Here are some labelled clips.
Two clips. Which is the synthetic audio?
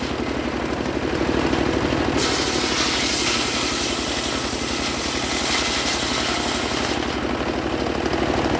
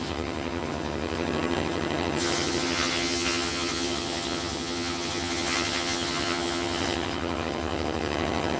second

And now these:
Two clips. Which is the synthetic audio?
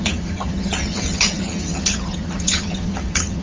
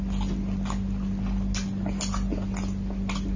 first